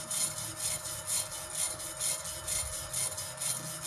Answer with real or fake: real